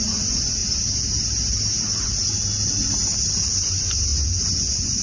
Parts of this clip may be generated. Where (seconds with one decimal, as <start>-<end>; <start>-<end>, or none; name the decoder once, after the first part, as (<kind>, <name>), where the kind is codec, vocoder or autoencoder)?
0.0-0.6 (vocoder, Vocos); 3.6-5.0